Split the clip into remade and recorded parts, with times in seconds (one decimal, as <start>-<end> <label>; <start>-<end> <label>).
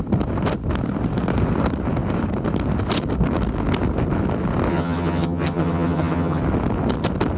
0.0-4.7 recorded; 4.7-6.4 remade; 6.4-7.4 recorded